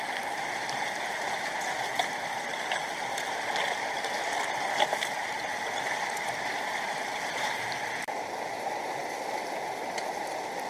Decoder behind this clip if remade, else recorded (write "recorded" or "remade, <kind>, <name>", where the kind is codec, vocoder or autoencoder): recorded